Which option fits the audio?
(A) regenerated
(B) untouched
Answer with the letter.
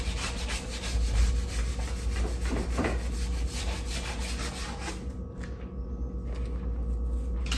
B